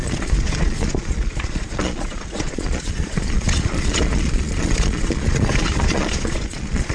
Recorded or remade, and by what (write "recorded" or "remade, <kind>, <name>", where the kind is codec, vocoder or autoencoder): remade, vocoder, Vocos